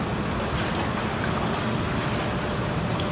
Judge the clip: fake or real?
real